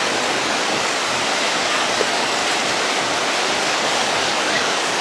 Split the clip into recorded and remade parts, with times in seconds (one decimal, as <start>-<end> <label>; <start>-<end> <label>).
0.0-1.0 remade; 1.0-1.6 recorded; 1.6-2.4 remade; 2.4-3.6 recorded; 3.6-5.0 remade